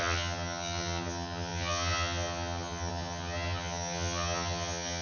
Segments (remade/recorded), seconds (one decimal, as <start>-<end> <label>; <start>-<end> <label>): 0.0-5.0 remade

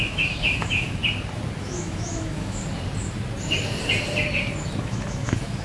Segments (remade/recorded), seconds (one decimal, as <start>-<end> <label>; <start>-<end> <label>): 0.0-1.0 remade; 1.0-1.6 recorded; 1.6-2.6 remade; 2.6-4.8 recorded; 4.8-5.6 remade

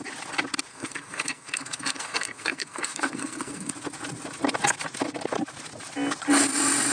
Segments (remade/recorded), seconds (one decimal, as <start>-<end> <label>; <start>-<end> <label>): 0.0-0.7 recorded; 0.7-3.7 remade; 3.7-6.9 recorded